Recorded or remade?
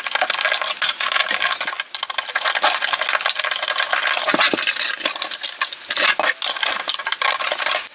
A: recorded